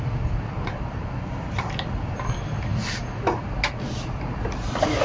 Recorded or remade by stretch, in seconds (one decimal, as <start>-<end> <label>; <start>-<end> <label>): 0.0-5.0 recorded